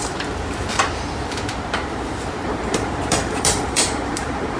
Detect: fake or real fake